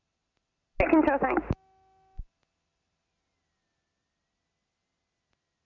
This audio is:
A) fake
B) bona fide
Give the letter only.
B